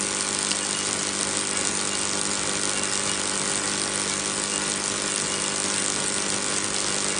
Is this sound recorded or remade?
recorded